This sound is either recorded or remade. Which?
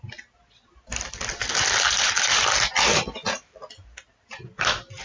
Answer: recorded